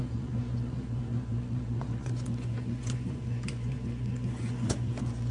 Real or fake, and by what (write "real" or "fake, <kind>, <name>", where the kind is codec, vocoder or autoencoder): fake, vocoder, Vocos